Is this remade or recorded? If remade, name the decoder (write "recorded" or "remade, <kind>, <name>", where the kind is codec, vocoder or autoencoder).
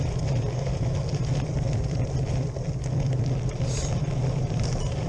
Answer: recorded